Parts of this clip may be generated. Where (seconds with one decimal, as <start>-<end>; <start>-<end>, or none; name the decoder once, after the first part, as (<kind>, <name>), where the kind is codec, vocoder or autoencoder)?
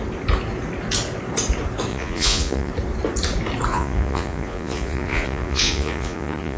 1.9-2.7 (vocoder, Vocos); 3.7-6.6